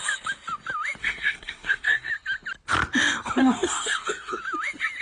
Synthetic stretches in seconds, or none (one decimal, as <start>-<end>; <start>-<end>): 1.0-2.1; 3.4-4.4